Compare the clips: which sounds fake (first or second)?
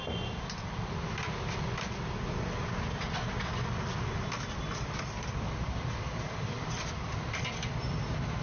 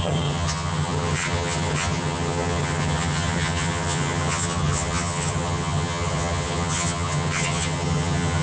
second